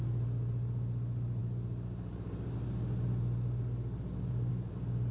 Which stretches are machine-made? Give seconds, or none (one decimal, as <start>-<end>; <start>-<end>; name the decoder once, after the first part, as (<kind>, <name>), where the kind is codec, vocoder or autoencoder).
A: none